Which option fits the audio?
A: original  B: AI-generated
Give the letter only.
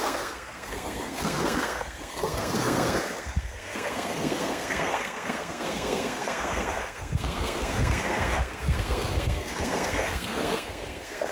B